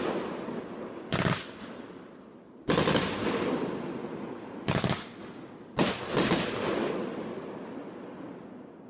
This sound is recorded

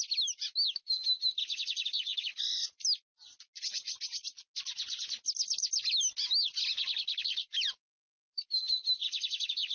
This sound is recorded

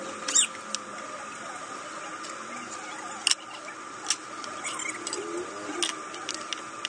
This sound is recorded